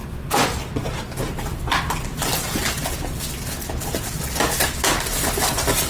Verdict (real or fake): real